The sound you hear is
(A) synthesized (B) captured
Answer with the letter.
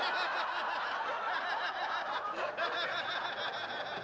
B